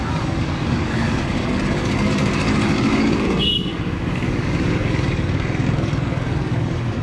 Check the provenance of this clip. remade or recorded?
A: remade